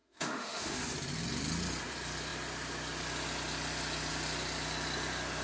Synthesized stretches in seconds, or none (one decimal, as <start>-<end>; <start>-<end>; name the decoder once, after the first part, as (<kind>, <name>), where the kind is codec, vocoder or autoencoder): 0.0-0.8 (autoencoder, DAC-VAE)